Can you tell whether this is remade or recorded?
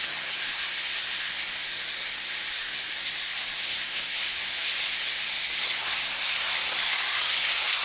remade